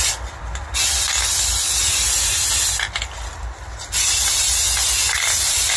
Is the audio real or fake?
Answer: real